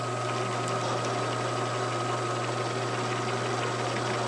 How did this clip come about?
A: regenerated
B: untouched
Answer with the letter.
B